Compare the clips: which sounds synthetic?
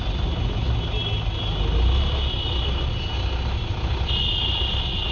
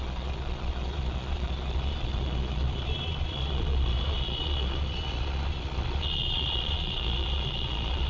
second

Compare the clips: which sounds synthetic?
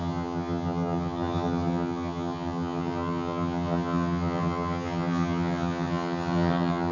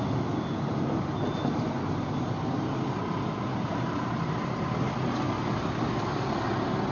first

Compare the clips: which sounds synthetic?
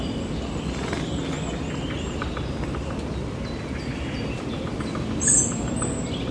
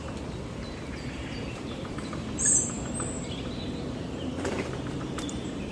second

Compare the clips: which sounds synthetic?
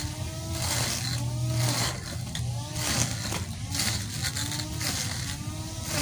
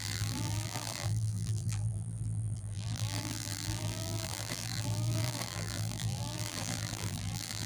second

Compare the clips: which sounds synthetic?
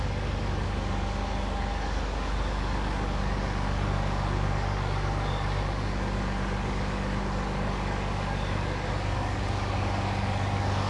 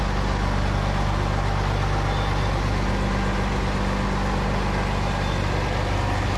first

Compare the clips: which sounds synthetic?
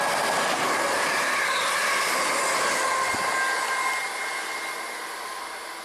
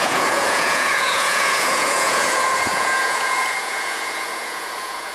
second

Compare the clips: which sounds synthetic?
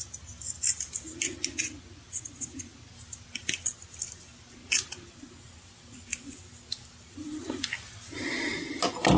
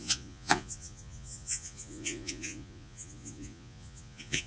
second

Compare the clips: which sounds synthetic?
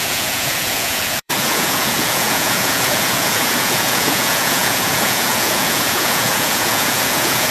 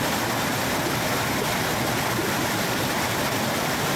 first